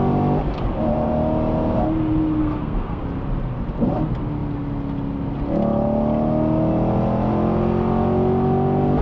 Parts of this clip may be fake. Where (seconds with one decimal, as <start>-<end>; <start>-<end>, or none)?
2.4-3.0